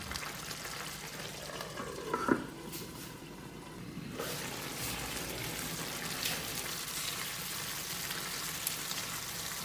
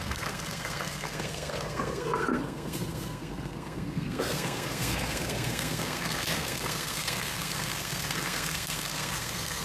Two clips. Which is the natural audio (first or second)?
first